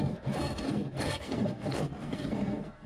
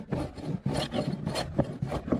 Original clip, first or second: second